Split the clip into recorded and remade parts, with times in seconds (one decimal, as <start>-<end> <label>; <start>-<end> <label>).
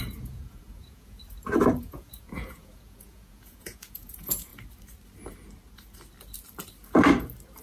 0.0-1.2 remade; 1.2-1.8 recorded; 1.8-4.5 remade; 4.5-7.6 recorded